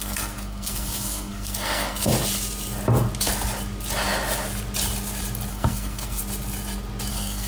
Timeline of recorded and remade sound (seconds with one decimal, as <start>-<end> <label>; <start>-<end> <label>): 0.0-2.1 remade; 2.1-5.5 recorded; 5.5-6.2 remade; 6.2-7.1 recorded; 7.1-7.5 remade